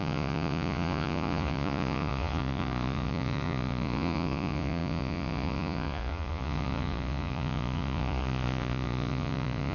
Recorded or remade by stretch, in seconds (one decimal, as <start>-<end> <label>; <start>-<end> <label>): 0.0-9.7 remade